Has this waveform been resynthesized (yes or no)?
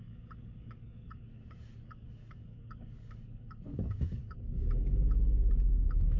yes